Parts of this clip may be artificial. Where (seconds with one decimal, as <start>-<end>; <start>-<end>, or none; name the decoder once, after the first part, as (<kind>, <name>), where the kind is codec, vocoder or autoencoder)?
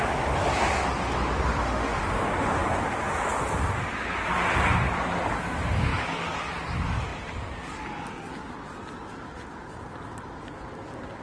1.5-2.0 (autoencoder, DAC-VAE)